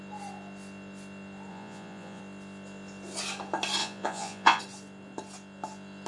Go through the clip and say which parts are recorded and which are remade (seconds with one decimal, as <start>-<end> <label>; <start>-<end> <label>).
0.0-1.5 recorded; 1.5-2.2 remade; 2.2-3.8 recorded; 3.8-4.6 remade; 4.6-6.1 recorded